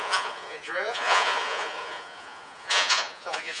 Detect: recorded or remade remade